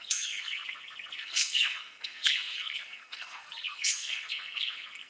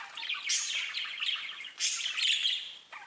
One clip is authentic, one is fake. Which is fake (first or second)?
first